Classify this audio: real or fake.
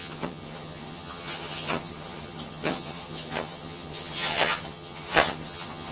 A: fake